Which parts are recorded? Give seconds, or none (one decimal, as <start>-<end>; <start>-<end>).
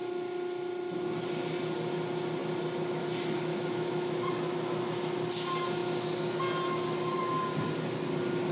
0.0-3.5; 4.3-8.5